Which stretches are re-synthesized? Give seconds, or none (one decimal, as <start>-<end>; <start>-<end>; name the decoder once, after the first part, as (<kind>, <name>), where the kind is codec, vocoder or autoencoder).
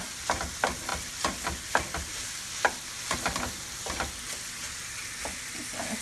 none